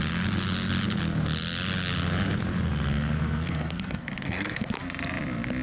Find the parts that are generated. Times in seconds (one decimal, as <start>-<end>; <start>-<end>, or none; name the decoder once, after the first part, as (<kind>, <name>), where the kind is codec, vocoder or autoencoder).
2.7-4.7 (codec, SNAC)